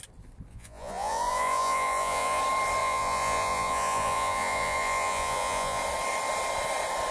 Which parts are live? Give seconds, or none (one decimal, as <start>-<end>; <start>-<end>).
0.0-0.5; 2.4-2.8; 5.8-7.1

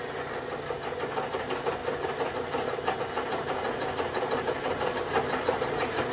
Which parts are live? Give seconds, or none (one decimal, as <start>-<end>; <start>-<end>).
0.0-6.1

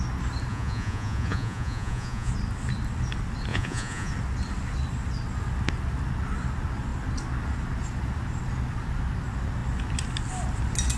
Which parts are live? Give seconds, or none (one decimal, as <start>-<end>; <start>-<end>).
0.0-0.5; 2.3-3.5; 4.1-11.0

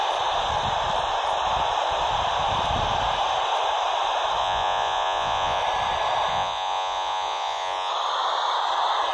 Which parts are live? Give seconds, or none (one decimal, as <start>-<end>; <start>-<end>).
0.0-4.4; 5.6-6.3; 7.9-9.1

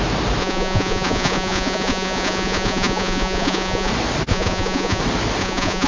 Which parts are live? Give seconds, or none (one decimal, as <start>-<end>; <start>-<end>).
0.0-0.4; 3.9-4.3; 5.0-5.4

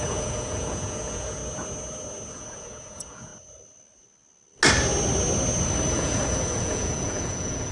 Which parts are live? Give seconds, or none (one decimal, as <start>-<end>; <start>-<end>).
1.4-2.3; 3.3-5.9

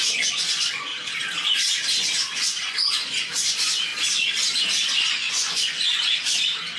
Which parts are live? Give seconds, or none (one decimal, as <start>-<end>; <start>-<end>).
0.9-2.0; 3.9-5.1; 5.9-6.8

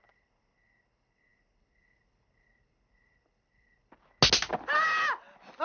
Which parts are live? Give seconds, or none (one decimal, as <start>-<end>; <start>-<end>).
0.0-5.6